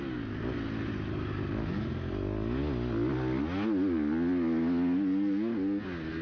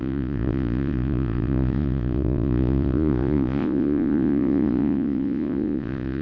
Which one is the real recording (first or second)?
first